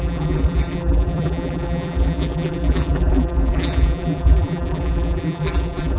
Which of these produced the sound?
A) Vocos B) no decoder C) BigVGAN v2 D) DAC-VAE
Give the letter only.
C